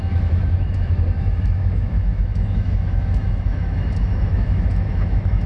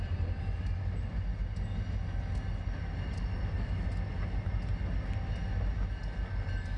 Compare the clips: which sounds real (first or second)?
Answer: second